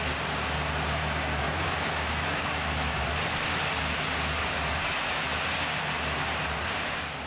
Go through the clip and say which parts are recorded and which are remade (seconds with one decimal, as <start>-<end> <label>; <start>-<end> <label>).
0.0-1.3 recorded; 1.3-3.0 remade; 3.0-4.4 recorded; 4.4-5.4 remade; 5.4-7.3 recorded